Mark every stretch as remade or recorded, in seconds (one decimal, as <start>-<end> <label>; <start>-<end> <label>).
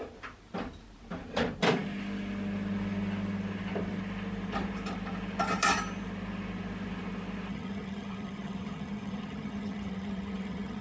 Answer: 0.0-7.5 recorded; 7.5-10.8 remade